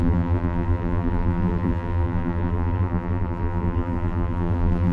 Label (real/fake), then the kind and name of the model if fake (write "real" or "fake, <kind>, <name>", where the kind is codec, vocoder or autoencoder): fake, vocoder, BigVGAN v2